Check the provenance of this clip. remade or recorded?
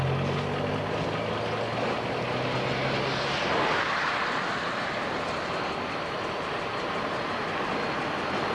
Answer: recorded